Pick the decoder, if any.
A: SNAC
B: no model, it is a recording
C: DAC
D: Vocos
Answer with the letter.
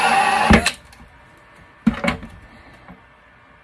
B